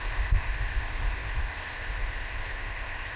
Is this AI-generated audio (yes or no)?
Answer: yes